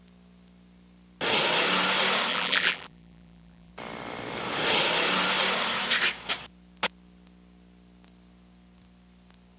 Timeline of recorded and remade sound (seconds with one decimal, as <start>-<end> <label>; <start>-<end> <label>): 0.0-2.3 recorded; 2.3-3.7 remade; 3.7-9.6 recorded